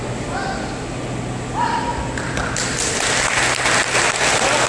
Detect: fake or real real